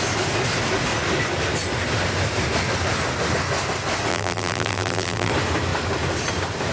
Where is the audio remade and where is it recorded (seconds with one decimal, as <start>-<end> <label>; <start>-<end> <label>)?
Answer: 0.0-4.1 recorded; 4.1-5.3 remade; 5.3-6.7 recorded